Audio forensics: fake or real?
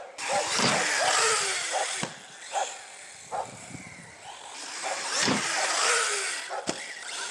real